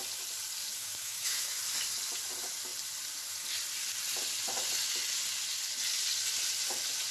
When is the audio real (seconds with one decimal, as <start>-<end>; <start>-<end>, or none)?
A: 0.0-0.8; 1.6-7.1